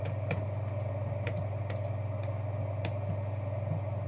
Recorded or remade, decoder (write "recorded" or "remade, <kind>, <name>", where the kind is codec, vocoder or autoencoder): recorded